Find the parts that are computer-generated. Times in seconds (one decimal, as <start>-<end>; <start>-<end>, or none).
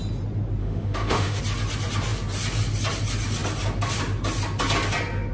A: 0.6-1.4